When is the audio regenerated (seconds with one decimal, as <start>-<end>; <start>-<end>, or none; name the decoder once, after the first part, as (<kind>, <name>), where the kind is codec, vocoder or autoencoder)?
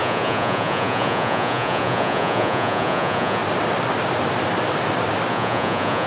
0.0-3.4 (vocoder, Vocos); 5.3-6.1